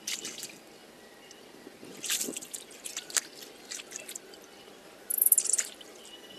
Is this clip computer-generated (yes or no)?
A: no